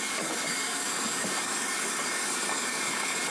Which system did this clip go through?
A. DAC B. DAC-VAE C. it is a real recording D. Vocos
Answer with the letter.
A